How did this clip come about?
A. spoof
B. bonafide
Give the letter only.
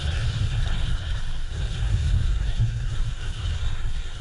A